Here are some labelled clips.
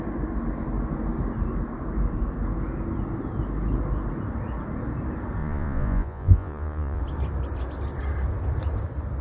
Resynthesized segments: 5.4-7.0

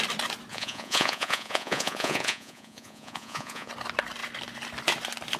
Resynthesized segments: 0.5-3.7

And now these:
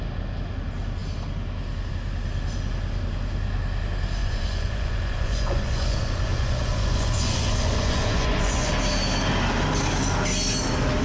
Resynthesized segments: 4.2-8.7

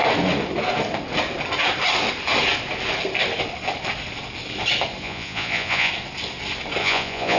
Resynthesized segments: 5.0-5.9; 6.8-7.4

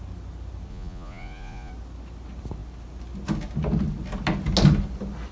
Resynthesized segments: 0.7-1.7

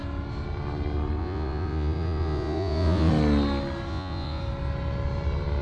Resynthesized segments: 1.2-3.1; 3.9-4.4